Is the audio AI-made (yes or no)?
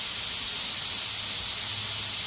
no